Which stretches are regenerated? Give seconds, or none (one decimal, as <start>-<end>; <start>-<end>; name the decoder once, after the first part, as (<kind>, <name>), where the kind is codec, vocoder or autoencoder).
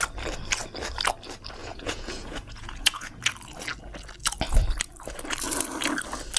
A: 1.6-3.2 (vocoder, Vocos)